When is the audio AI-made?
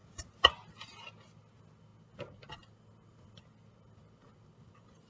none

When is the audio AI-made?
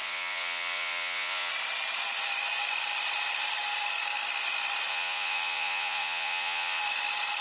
0.0-1.5 (vocoder, Vocos); 4.9-6.8